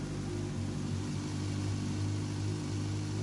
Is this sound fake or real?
real